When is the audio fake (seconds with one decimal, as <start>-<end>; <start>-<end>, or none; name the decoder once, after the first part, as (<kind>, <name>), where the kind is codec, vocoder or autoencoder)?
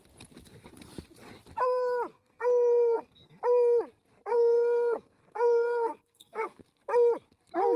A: 2.1-3.4 (codec, SNAC); 4.3-6.6